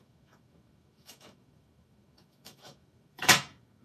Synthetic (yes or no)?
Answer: yes